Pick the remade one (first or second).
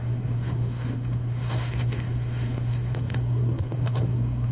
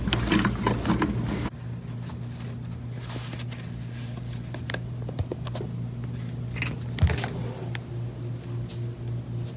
first